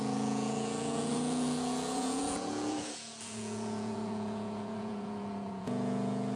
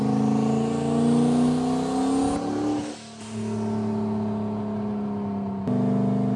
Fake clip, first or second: first